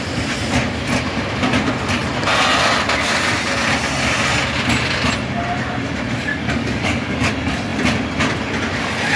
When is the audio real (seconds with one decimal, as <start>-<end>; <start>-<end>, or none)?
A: 0.0-6.3; 7.3-9.2